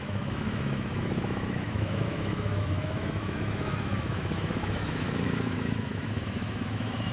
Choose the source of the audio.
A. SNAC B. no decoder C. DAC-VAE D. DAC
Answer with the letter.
C